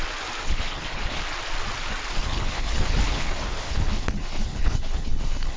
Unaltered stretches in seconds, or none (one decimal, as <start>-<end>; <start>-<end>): 0.0-0.4; 1.2-2.1